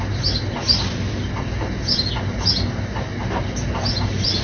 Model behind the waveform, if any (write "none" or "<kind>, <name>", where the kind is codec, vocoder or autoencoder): none